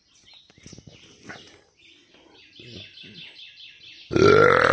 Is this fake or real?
real